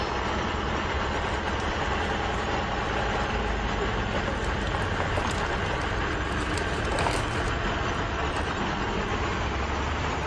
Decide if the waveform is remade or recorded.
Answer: recorded